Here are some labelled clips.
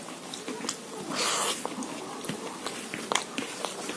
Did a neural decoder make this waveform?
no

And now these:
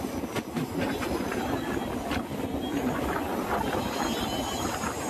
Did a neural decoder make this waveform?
no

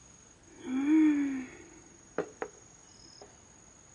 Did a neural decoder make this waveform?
no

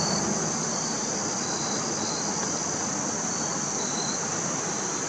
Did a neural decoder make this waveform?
no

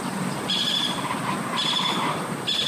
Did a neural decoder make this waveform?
no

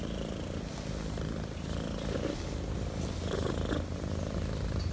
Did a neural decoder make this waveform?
no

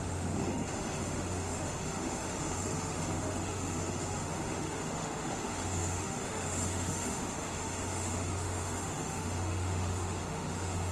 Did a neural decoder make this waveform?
yes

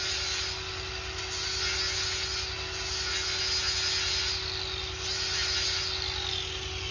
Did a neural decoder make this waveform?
no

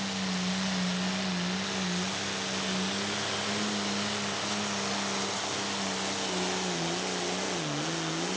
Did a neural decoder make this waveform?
no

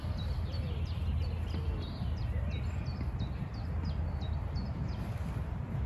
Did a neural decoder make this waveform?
no